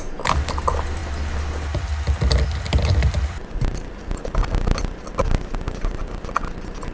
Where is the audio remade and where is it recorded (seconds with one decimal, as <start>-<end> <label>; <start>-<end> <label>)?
0.0-6.9 recorded